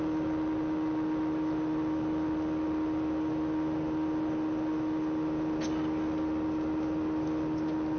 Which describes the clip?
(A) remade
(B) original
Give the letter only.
B